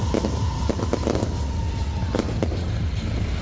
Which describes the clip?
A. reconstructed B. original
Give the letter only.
B